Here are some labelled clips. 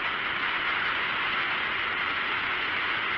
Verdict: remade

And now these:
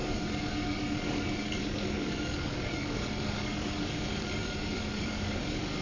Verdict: remade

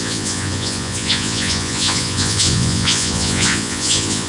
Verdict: remade